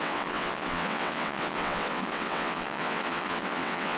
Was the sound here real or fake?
fake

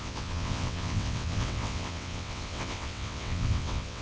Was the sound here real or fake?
fake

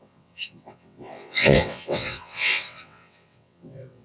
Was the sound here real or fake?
fake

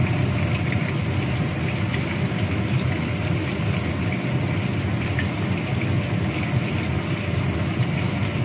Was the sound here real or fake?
real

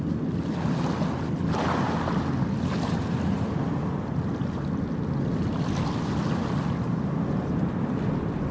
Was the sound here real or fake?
real